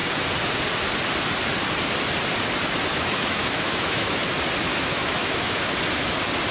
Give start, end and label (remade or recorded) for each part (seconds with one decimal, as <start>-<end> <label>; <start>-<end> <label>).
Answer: 0.0-2.9 recorded; 2.9-4.3 remade; 4.3-4.7 recorded; 4.7-5.6 remade; 5.6-6.5 recorded